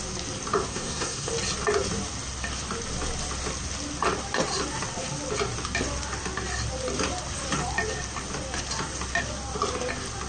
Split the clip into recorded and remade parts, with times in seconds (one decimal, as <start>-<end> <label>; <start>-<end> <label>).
0.0-0.7 recorded; 0.7-1.3 remade; 1.3-10.3 recorded